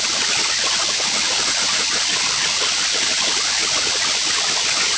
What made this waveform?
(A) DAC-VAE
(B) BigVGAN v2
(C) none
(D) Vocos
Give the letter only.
B